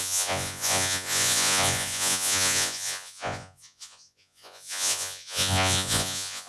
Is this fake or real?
fake